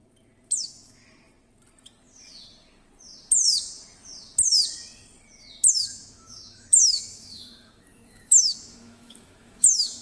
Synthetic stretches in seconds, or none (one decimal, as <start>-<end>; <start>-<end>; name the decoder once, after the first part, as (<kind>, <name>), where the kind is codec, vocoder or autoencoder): 0.6-1.0 (autoencoder, DAC-VAE); 5.7-10.0